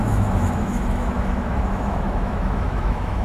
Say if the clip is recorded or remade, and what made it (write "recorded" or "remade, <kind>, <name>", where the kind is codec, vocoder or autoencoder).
remade, autoencoder, DAC-VAE